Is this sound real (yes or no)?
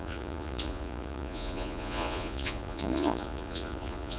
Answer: no